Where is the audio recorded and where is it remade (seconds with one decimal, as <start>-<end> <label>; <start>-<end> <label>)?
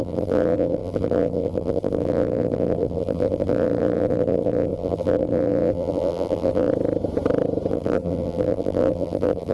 0.0-6.7 remade; 6.7-7.7 recorded; 7.7-9.5 remade